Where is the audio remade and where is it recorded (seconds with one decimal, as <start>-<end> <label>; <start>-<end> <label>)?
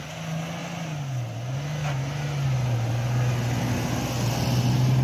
0.0-5.0 recorded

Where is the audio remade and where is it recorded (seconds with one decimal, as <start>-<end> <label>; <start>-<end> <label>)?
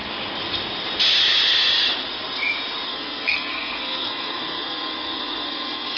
0.0-2.9 recorded; 2.9-6.0 remade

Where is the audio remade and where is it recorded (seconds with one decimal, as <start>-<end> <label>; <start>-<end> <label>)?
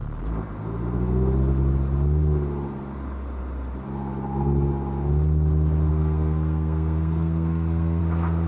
0.0-5.9 recorded; 5.9-8.0 remade; 8.0-8.5 recorded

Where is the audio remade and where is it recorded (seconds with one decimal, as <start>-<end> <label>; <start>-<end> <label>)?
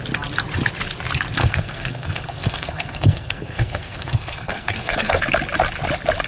0.0-1.4 recorded; 1.4-5.2 remade; 5.2-6.3 recorded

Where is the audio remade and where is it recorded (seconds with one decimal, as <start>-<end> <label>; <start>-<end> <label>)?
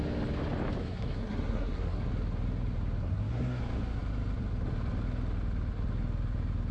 0.0-0.8 recorded; 0.8-2.1 remade; 2.1-3.0 recorded; 3.0-3.6 remade; 3.6-6.7 recorded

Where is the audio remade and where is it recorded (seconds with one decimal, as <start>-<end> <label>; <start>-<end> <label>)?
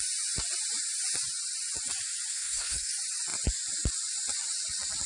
0.0-2.3 recorded; 2.3-2.9 remade; 2.9-5.1 recorded